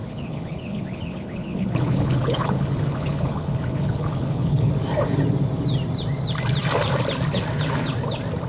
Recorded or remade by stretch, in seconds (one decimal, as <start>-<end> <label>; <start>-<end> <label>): 0.0-4.7 remade; 4.7-8.5 recorded